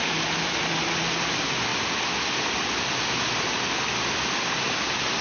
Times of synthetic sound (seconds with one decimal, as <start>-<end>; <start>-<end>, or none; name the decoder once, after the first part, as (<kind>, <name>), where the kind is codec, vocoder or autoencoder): none